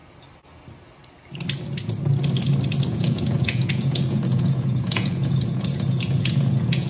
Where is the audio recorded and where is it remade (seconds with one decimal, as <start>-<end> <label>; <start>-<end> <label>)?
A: 0.0-2.9 recorded; 2.9-6.9 remade

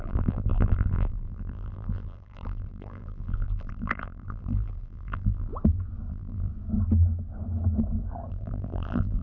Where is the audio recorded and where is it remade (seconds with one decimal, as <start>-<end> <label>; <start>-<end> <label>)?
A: 0.0-5.5 remade; 5.5-6.1 recorded; 6.1-6.5 remade; 6.5-8.3 recorded; 8.3-9.2 remade

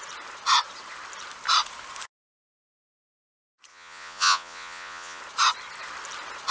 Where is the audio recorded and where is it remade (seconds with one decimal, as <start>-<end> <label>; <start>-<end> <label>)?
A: 0.0-3.7 recorded; 3.7-5.2 remade; 5.2-6.5 recorded

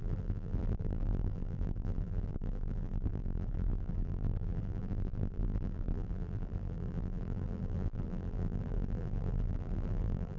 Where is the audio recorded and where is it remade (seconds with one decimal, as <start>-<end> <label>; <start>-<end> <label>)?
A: 0.0-10.4 remade

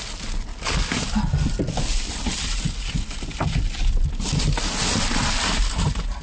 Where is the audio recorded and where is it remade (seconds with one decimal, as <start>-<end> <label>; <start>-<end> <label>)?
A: 0.0-6.2 recorded

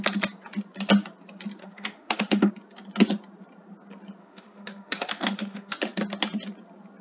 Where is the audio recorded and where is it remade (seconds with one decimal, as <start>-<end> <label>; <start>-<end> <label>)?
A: 0.0-1.6 recorded; 1.6-2.5 remade; 2.5-4.2 recorded; 4.2-5.7 remade; 5.7-7.0 recorded

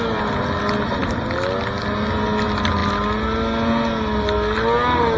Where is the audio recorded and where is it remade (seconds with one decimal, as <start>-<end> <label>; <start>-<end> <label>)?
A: 0.0-5.2 recorded